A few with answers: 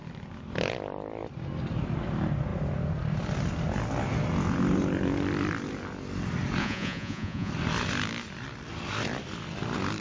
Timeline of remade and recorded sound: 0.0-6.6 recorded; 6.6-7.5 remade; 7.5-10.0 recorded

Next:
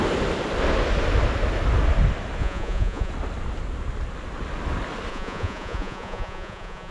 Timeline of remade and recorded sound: 0.0-2.4 recorded; 2.4-3.1 remade; 3.1-5.1 recorded; 5.1-6.9 remade

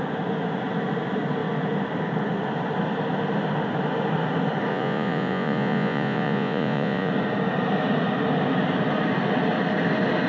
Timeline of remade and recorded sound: 0.0-4.7 recorded; 4.7-7.1 remade; 7.1-10.3 recorded

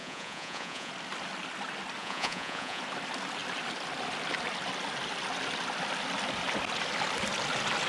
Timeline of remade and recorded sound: 0.0-0.9 remade; 0.9-2.0 recorded; 2.0-2.8 remade; 2.8-7.9 recorded

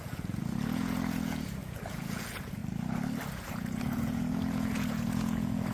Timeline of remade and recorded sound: 0.0-2.6 remade; 2.6-3.3 recorded; 3.3-5.7 remade

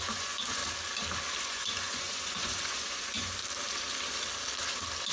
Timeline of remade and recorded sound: 0.0-0.6 remade; 0.6-1.4 recorded; 1.4-3.4 remade; 3.4-5.1 recorded

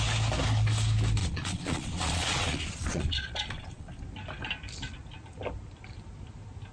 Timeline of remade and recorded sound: 0.0-1.2 recorded; 1.2-4.0 remade; 4.0-6.7 recorded

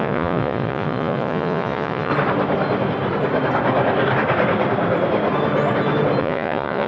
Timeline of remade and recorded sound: 0.0-2.1 remade; 2.1-6.2 recorded; 6.2-6.9 remade